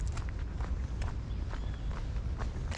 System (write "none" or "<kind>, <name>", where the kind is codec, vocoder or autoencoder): none